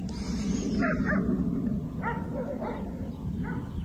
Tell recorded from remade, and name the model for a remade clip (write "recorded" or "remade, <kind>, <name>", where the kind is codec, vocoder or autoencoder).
recorded